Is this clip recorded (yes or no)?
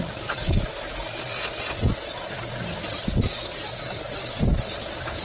yes